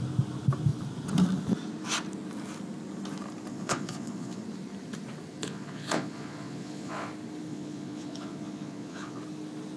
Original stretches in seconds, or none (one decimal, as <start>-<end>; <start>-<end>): 0.0-3.5; 4.4-5.4; 7.1-7.5; 9.2-9.8